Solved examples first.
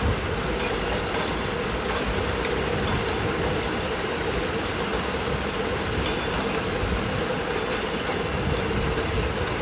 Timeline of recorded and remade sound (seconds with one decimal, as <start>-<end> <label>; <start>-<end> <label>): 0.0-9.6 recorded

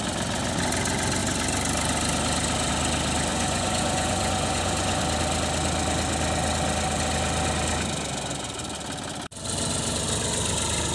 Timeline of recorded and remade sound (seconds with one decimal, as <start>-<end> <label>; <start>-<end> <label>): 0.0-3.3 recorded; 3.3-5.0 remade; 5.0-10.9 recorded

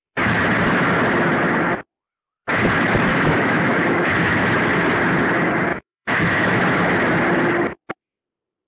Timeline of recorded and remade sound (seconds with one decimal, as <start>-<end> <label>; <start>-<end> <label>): 0.0-3.1 recorded; 3.1-4.4 remade; 4.4-5.7 recorded; 5.7-6.6 remade; 6.6-8.7 recorded